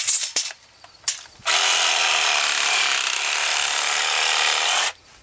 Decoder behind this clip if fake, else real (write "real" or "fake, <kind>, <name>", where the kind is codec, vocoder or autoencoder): real